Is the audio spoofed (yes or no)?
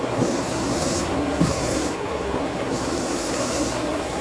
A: yes